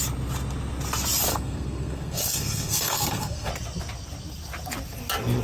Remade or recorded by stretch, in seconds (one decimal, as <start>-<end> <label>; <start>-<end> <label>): 0.0-1.3 recorded; 1.3-3.5 remade; 3.5-5.4 recorded